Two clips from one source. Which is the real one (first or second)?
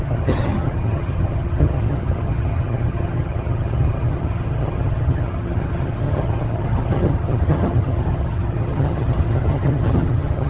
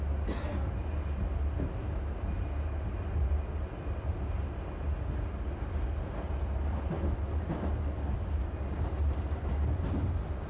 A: second